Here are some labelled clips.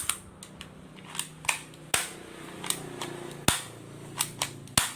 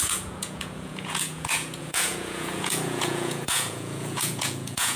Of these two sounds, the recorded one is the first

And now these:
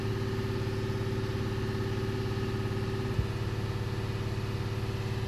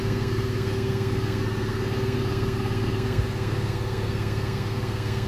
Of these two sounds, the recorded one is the first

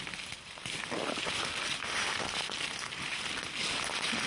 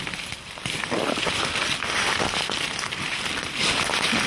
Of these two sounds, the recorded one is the first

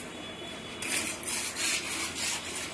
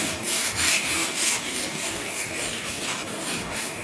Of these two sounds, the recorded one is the first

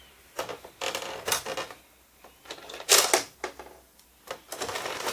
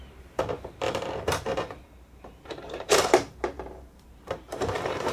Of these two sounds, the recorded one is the first